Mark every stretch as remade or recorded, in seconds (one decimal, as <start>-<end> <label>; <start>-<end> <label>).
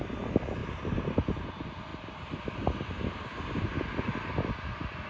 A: 0.0-0.6 recorded; 0.6-1.3 remade; 1.3-5.1 recorded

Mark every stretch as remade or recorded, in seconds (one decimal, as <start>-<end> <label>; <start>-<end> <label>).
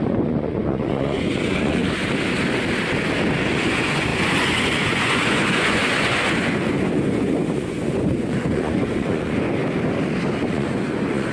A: 0.0-1.8 remade; 1.8-3.4 recorded; 3.4-9.6 remade; 9.6-10.5 recorded; 10.5-11.3 remade